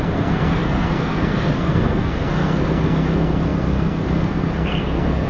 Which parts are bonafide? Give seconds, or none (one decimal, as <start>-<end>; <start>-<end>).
none

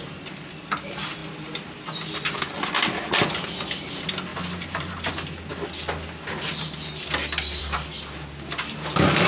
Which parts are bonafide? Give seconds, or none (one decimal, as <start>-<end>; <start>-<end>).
0.0-4.3; 5.1-9.3

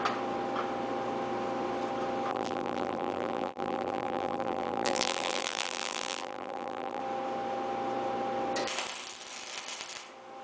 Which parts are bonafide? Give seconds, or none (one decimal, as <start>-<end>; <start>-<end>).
0.0-2.3; 7.0-10.4

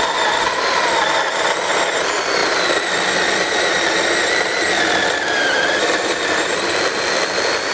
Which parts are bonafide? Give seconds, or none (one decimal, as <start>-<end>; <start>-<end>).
0.0-7.7

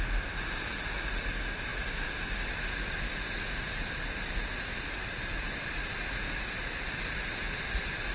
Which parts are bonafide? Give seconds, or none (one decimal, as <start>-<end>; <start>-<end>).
0.0-8.1

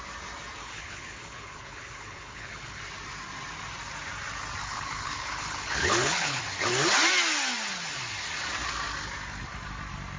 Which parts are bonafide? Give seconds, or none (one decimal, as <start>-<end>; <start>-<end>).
0.0-0.6; 2.8-4.6; 6.4-10.2

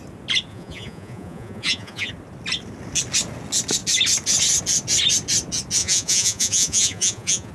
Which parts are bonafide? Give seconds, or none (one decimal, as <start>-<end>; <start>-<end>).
0.0-0.5; 2.1-5.8